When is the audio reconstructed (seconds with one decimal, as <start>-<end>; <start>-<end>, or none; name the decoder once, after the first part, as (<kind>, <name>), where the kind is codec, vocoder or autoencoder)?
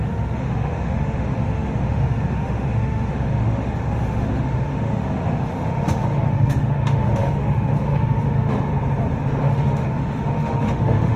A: 0.0-8.7 (autoencoder, DAC-VAE); 9.4-11.2